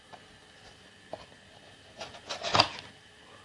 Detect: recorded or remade recorded